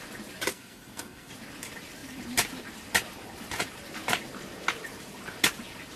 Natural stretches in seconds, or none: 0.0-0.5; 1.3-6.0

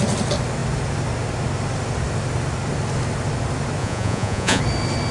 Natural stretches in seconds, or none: 0.0-3.8; 4.6-5.1

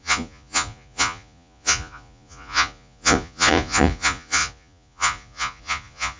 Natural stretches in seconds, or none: none

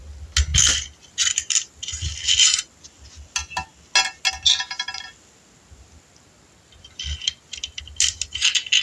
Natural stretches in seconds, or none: 0.0-8.8

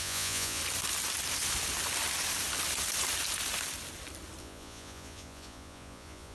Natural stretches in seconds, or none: 0.6-4.4